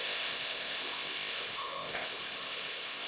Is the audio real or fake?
fake